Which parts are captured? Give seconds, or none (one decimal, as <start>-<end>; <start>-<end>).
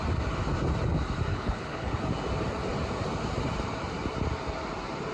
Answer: 0.0-1.3; 2.0-5.1